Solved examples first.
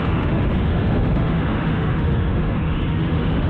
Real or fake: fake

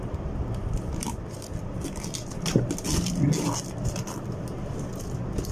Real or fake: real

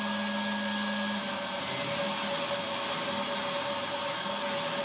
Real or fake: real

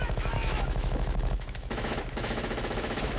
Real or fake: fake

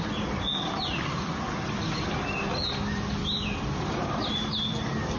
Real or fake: real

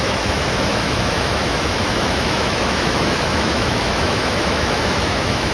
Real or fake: fake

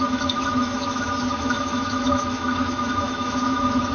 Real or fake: fake